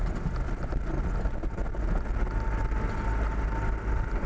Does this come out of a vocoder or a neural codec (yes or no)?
no